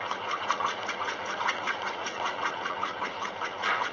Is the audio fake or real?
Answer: fake